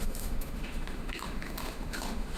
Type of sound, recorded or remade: remade